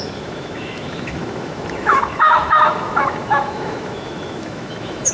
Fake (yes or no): yes